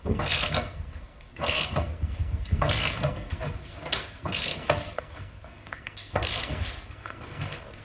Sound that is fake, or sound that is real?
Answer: fake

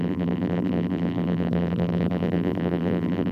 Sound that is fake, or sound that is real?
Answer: fake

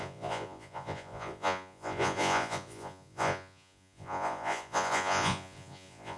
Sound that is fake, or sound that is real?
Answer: fake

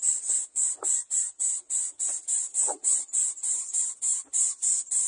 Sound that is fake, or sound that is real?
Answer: real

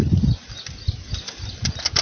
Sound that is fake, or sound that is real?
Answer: real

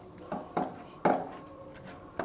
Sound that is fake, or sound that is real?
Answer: real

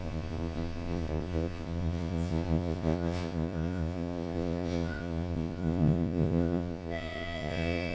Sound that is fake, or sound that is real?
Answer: fake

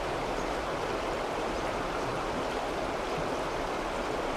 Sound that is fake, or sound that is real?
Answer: real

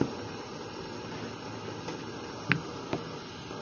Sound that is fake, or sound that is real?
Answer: real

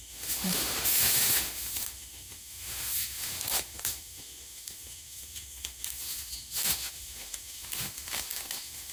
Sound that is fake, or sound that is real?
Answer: fake